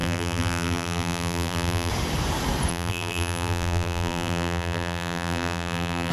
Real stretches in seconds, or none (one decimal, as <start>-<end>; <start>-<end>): 1.9-2.7